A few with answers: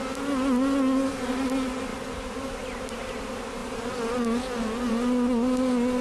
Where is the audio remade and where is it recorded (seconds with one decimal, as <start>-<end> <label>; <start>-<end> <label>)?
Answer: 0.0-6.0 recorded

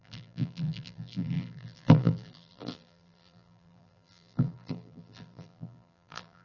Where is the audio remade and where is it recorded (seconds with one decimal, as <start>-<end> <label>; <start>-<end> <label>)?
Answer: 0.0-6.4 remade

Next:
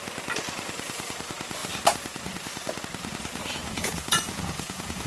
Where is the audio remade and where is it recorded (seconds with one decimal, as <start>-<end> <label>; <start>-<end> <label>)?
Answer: 0.0-3.6 recorded; 3.6-5.1 remade

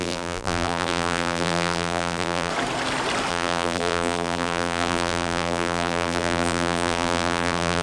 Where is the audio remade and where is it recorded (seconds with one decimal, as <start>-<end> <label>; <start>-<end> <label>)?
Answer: 0.0-2.5 remade; 2.5-3.3 recorded; 3.3-7.8 remade